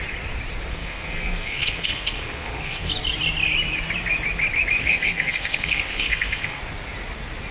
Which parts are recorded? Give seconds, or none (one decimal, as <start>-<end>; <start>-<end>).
0.0-0.7; 2.9-4.8; 6.6-7.5